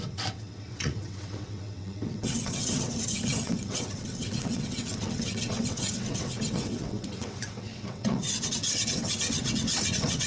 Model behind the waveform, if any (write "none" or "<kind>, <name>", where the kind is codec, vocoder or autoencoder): vocoder, WaveNeXt